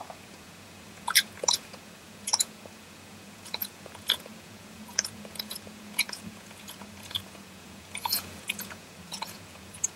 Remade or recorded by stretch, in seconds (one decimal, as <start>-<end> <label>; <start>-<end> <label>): 0.0-10.0 remade